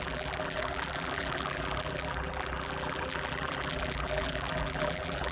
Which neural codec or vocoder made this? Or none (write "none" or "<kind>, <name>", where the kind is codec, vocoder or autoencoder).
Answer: vocoder, BigVGAN v2